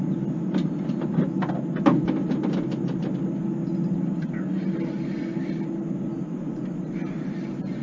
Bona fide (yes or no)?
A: yes